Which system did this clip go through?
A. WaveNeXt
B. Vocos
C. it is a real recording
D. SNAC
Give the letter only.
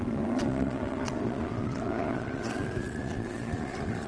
B